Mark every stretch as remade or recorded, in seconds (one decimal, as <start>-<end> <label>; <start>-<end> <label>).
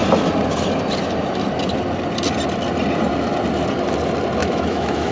0.0-4.4 recorded; 4.4-5.1 remade